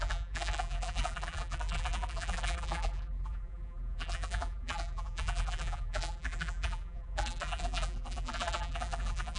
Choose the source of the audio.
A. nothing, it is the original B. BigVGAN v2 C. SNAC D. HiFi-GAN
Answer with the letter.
B